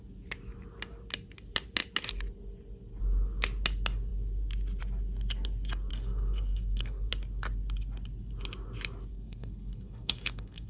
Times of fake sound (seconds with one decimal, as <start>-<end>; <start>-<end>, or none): 5.9-7.1; 9.1-10.7